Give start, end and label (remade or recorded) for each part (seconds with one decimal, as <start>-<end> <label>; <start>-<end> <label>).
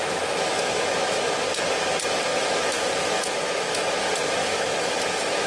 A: 0.0-1.3 remade; 1.3-2.3 recorded; 2.3-4.0 remade; 4.0-4.4 recorded; 4.4-5.5 remade